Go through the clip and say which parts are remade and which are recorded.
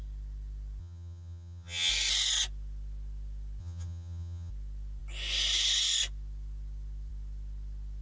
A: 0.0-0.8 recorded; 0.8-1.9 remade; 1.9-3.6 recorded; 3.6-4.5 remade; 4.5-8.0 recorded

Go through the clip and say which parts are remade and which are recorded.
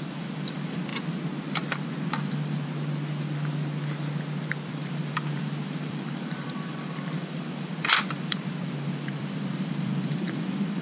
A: 0.0-0.9 remade; 0.9-4.7 recorded; 4.7-10.8 remade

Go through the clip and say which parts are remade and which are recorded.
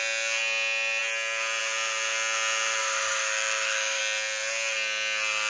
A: 0.0-2.8 recorded; 2.8-4.0 remade; 4.0-5.5 recorded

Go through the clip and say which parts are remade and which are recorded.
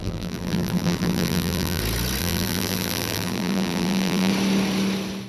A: 0.0-1.8 remade; 1.8-2.2 recorded; 2.2-4.3 remade; 4.3-5.3 recorded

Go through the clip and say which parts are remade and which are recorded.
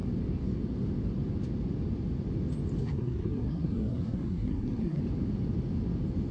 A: 0.0-2.8 recorded; 2.8-5.0 remade; 5.0-6.3 recorded